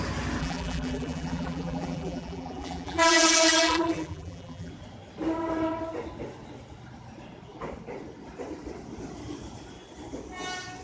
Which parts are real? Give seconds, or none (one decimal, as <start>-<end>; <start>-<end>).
0.0-0.4; 4.7-10.8